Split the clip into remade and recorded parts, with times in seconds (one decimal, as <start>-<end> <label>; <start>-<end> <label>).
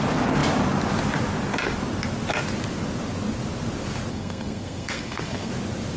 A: 0.0-4.1 recorded; 4.1-5.5 remade; 5.5-6.0 recorded